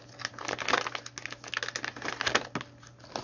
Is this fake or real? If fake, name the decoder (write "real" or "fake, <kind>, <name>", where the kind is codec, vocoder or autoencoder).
real